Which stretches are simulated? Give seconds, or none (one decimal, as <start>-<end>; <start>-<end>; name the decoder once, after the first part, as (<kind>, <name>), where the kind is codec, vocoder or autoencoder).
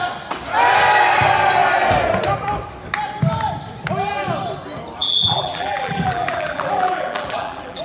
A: 5.0-7.8 (vocoder, BigVGAN v2)